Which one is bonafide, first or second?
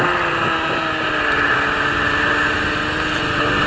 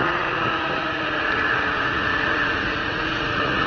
first